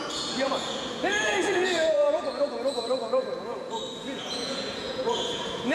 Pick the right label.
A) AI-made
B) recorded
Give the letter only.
A